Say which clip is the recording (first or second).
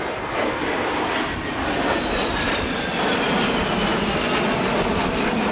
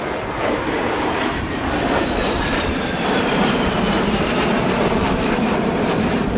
first